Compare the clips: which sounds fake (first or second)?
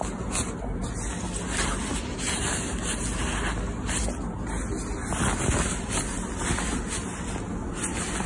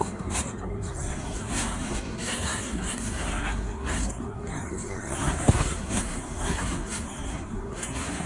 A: second